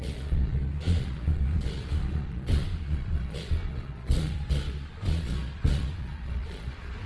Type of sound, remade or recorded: remade